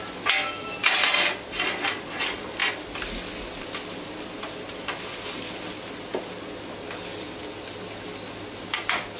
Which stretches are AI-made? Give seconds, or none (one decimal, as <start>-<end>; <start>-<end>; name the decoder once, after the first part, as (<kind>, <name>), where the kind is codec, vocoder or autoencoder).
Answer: none